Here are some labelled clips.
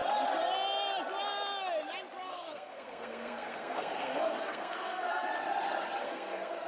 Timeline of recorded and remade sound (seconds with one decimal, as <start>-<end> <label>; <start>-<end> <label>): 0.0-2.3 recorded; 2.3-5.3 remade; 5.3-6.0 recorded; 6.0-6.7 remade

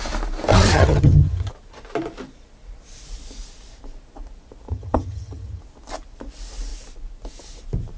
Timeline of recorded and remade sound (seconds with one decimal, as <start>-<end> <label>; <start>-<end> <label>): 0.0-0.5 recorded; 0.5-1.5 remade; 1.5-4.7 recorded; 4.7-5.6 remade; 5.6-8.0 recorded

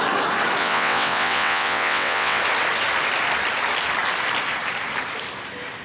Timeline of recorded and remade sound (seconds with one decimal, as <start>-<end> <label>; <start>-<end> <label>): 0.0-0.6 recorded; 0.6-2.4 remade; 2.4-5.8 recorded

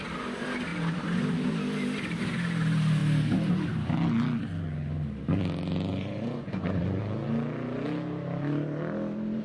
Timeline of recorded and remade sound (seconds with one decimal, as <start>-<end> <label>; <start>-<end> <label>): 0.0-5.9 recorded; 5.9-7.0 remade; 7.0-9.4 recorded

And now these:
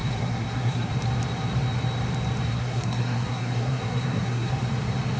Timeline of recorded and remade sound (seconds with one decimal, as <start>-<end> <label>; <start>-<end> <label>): 0.0-0.9 remade; 0.9-2.5 recorded; 2.5-4.5 remade; 4.5-5.2 recorded